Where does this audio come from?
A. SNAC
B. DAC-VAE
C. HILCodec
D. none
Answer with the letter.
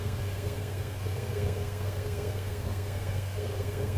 A